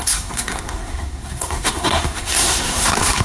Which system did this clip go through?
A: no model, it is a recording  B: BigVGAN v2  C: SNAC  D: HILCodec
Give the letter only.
C